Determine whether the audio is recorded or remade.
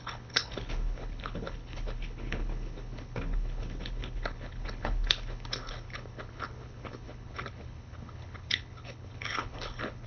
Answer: remade